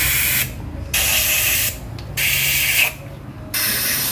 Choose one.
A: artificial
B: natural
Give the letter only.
B